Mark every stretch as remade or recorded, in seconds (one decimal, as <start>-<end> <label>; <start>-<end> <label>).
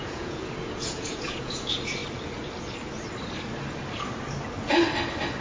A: 0.0-2.0 remade; 2.0-5.4 recorded